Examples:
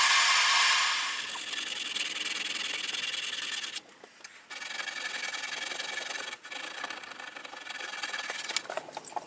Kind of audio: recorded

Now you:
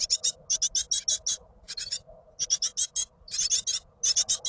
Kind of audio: recorded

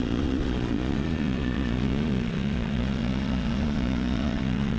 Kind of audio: remade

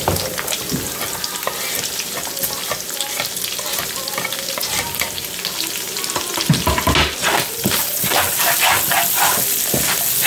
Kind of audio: recorded